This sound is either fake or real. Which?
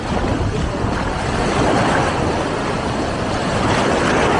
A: real